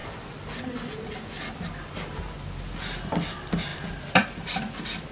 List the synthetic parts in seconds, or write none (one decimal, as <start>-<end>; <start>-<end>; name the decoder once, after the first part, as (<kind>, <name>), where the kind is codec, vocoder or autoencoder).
0.0-3.1 (vocoder, BigVGAN v2); 3.7-4.2

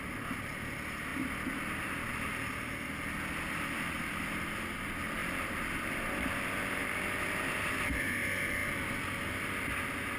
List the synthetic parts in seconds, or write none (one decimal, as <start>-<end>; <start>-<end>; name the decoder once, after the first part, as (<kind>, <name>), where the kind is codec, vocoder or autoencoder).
0.0-1.1 (vocoder, BigVGAN v2); 3.5-8.6

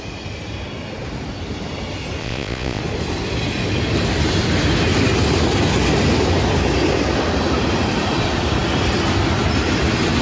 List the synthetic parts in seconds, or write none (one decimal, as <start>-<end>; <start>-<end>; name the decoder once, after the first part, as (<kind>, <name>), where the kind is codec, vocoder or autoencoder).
2.2-2.8 (vocoder, Vocos)

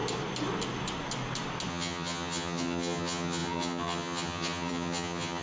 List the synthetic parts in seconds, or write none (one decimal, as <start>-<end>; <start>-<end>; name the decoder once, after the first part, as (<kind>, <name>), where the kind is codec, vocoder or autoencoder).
1.7-5.4 (vocoder, HiFi-GAN)